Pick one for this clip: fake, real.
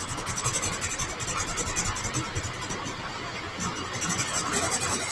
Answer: real